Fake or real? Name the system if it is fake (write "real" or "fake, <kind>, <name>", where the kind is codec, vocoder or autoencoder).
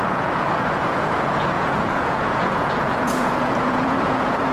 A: fake, vocoder, Vocos